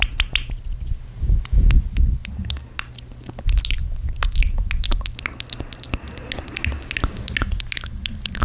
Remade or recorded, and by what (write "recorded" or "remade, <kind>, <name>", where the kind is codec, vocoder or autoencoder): recorded